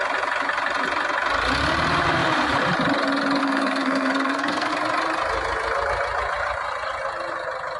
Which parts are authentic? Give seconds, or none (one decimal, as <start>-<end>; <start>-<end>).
0.0-3.4; 4.7-7.8